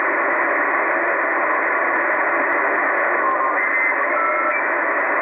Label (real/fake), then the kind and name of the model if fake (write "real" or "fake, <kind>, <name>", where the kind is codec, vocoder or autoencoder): real